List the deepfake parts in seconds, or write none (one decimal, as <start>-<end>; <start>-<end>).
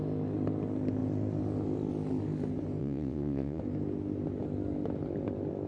2.8-3.6